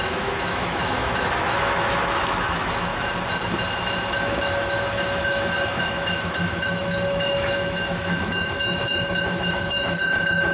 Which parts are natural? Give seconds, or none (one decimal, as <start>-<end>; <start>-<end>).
2.9-4.1